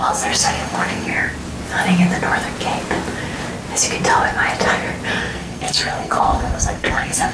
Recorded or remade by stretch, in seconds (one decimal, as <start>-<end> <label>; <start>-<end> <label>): 0.0-1.1 remade; 1.1-5.2 recorded; 5.2-7.3 remade